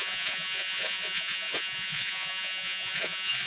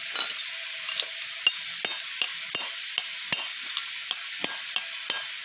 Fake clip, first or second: first